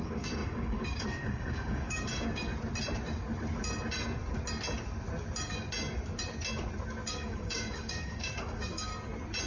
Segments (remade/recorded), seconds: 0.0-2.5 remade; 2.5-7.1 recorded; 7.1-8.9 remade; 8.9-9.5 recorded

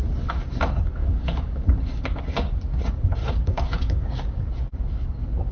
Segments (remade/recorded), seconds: 0.0-1.0 recorded; 1.0-2.2 remade; 2.2-3.2 recorded; 3.2-4.4 remade; 4.4-5.5 recorded

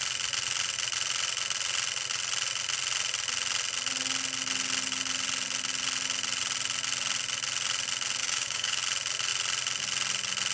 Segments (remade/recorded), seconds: 0.0-8.2 recorded; 8.2-8.8 remade; 8.8-10.5 recorded

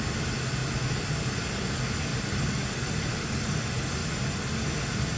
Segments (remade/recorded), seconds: 0.0-5.2 recorded